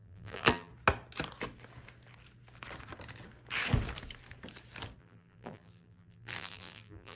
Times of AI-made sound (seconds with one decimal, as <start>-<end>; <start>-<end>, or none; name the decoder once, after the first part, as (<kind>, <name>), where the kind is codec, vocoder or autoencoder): 0.0-0.7 (vocoder, BigVGAN v2); 5.0-7.2